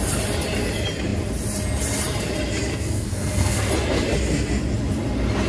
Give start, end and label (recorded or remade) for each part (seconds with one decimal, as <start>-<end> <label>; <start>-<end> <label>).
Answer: 0.0-2.7 recorded; 2.7-3.7 remade; 3.7-5.5 recorded